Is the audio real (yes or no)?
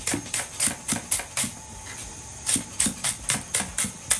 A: yes